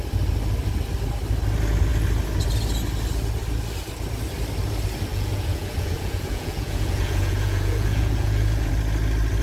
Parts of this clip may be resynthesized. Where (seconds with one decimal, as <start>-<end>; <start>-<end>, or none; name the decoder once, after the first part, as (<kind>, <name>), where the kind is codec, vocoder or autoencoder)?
5.1-8.7 (vocoder, Vocos)